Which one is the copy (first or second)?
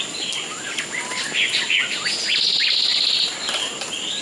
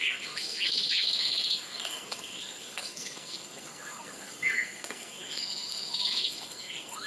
second